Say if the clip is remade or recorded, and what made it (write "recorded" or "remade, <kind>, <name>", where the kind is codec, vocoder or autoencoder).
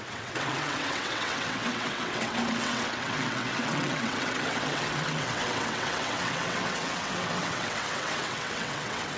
remade, vocoder, WaveNeXt